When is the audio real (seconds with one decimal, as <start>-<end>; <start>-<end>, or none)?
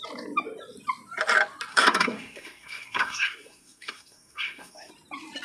0.0-1.7; 4.9-5.4